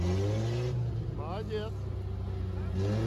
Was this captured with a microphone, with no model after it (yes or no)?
yes